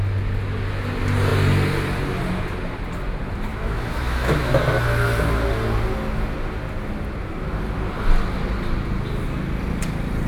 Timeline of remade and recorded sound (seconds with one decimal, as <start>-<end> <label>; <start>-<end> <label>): 0.0-3.5 recorded; 3.5-4.6 remade; 4.6-10.3 recorded